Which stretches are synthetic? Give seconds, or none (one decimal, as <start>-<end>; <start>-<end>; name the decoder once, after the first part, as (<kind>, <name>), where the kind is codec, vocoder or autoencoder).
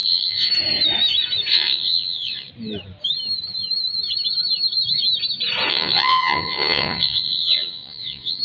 0.0-0.5 (vocoder, WaveNeXt); 1.5-2.5; 5.7-8.4